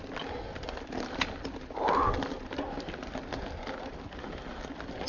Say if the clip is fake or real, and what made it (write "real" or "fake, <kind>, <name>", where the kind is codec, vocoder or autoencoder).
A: real